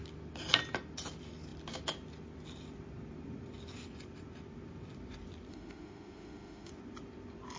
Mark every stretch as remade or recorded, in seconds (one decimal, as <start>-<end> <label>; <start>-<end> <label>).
0.0-5.5 recorded; 5.5-6.7 remade; 6.7-7.6 recorded